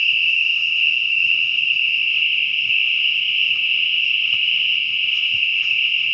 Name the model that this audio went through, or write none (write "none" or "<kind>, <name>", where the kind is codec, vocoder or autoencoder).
codec, ZipCodec